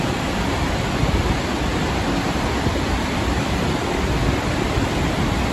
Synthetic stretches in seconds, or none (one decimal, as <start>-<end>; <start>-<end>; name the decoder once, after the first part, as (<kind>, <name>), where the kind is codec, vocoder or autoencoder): 0.0-1.7 (vocoder, BigVGAN v2); 2.6-5.5